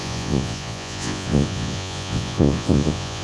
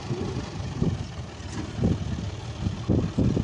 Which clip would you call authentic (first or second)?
second